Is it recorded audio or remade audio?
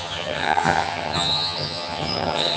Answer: remade